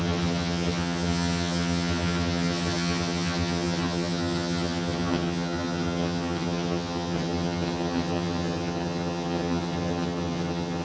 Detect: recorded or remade remade